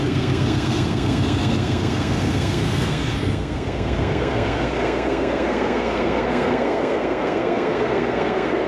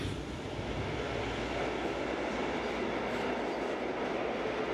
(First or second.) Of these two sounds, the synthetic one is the first